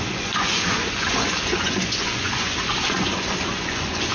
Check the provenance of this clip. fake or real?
fake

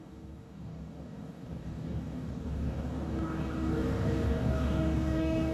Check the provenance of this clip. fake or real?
fake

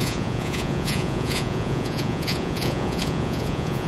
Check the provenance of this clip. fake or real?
fake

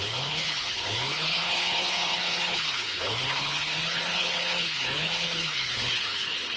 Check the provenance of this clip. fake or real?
fake